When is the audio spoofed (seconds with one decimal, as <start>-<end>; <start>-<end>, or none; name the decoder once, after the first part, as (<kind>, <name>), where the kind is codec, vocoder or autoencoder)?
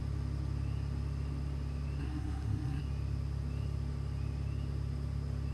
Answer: 2.0-2.8 (codec, SNAC)